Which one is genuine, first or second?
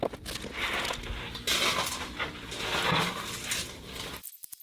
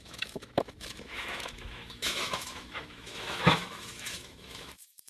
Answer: first